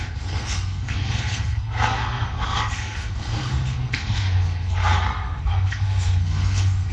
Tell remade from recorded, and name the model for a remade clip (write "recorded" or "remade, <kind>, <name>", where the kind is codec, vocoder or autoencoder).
remade, codec, SNAC